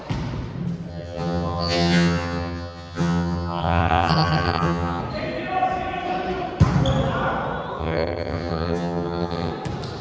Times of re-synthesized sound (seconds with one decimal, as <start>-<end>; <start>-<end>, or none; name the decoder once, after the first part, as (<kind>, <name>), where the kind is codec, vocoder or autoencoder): 0.9-5.0 (vocoder, HiFi-GAN); 7.8-9.5